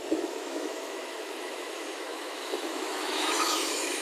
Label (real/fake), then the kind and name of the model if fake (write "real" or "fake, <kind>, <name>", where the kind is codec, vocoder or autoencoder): fake, autoencoder, DAC-VAE